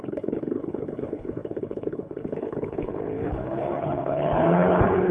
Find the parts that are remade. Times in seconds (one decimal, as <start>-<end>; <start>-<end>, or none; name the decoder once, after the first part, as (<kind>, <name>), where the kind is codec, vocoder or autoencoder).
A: 0.0-5.1 (codec, HILCodec)